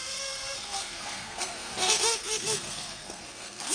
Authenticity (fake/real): fake